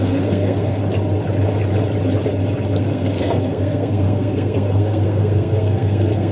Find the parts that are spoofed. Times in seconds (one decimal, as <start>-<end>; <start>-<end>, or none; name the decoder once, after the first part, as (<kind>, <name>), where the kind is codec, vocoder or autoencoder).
0.0-0.8 (codec, SNAC); 2.8-6.3